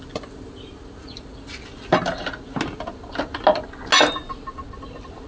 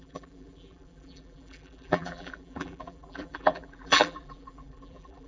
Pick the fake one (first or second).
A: second